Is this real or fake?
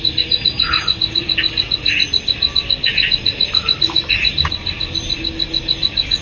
real